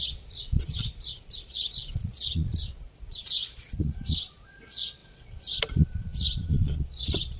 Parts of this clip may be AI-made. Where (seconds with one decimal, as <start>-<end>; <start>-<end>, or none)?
0.0-7.4